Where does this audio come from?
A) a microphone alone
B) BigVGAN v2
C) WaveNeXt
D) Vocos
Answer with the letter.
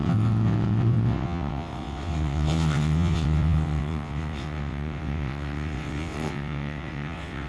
C